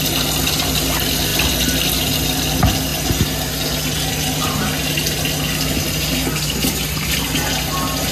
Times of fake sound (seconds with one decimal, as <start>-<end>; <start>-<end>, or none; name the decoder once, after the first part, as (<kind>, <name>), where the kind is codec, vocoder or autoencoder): none